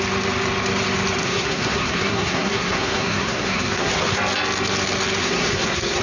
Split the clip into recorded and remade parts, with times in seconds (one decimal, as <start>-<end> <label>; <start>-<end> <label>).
0.0-1.2 recorded; 1.2-3.9 remade; 3.9-5.2 recorded; 5.2-6.0 remade